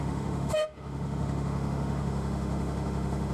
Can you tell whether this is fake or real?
fake